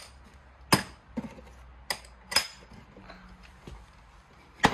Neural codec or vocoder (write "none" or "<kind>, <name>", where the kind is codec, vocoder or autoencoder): none